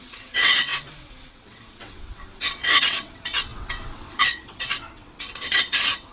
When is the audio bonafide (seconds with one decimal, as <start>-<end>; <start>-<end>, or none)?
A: none

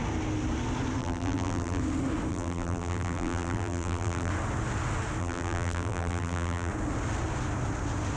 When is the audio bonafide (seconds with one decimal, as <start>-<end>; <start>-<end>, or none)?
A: 0.0-1.0; 1.8-2.3; 4.3-5.2; 6.7-8.2